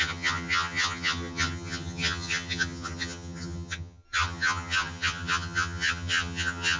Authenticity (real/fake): fake